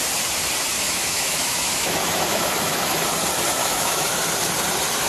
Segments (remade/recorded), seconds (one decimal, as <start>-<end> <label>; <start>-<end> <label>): 0.0-0.7 recorded; 0.7-3.0 remade; 3.0-3.6 recorded; 3.6-4.2 remade; 4.2-5.1 recorded